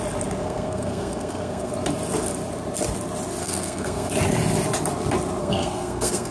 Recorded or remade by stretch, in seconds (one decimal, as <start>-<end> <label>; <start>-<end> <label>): 0.0-0.4 recorded; 0.4-1.7 remade; 1.7-3.4 recorded; 3.4-4.1 remade; 4.1-5.4 recorded; 5.4-6.3 remade